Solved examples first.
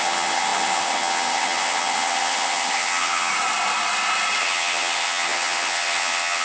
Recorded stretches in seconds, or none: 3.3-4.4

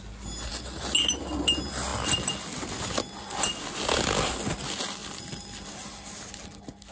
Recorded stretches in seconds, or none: 0.0-6.9

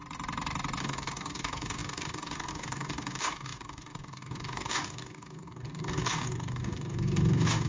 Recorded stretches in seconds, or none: 0.0-0.8